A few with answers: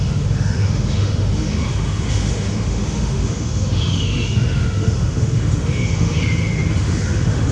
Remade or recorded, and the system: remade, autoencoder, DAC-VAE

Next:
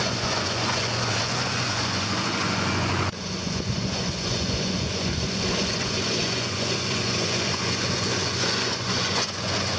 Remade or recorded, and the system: remade, vocoder, Vocos